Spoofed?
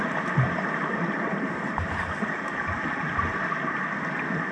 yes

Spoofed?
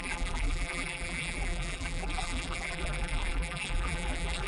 yes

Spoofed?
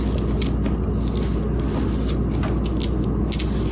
no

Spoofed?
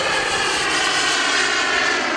no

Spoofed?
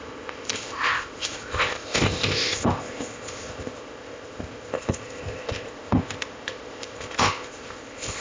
yes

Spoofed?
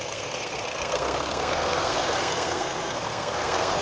yes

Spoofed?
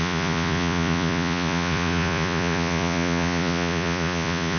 yes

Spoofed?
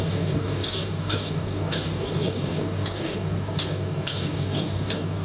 yes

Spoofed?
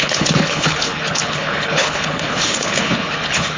yes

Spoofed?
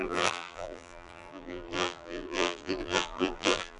yes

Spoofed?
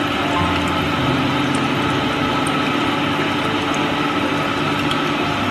no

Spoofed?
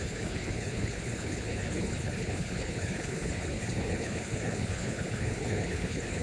yes